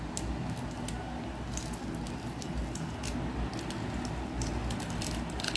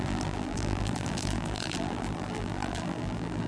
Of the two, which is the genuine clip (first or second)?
first